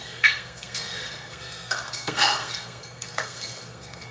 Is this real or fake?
fake